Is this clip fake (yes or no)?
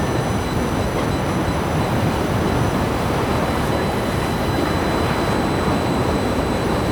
no